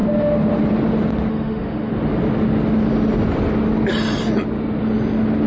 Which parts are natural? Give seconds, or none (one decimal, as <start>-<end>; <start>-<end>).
0.0-1.3; 1.9-5.5